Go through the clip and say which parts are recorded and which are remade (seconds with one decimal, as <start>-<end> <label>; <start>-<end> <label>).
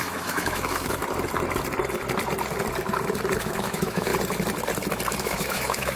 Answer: 0.0-1.0 remade; 1.0-3.4 recorded; 3.4-4.1 remade; 4.1-5.2 recorded; 5.2-6.0 remade